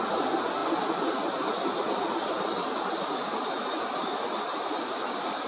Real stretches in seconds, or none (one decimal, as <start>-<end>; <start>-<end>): 0.0-5.5